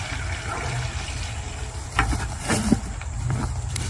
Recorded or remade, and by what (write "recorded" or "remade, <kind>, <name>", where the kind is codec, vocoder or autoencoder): remade, vocoder, BigVGAN v2